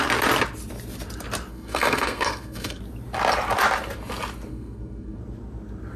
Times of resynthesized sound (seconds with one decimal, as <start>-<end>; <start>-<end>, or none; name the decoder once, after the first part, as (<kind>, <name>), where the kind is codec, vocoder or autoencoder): 1.5-2.8 (codec, SNAC); 4.5-5.2